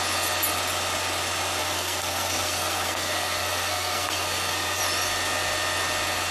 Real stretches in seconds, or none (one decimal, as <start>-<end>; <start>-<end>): 0.0-1.6; 4.8-6.3